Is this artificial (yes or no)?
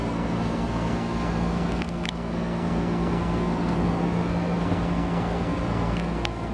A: yes